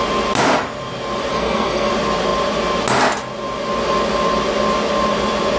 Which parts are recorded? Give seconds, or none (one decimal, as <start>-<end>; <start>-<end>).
0.0-1.3; 1.9-5.6